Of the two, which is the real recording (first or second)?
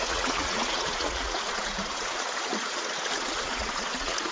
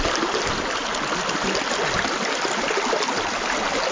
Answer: second